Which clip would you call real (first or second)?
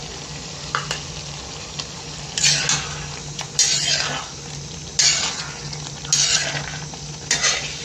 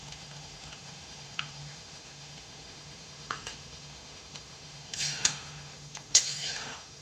first